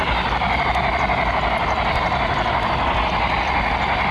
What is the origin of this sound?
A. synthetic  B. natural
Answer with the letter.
B